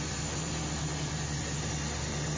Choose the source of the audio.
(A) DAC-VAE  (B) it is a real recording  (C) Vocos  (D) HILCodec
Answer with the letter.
B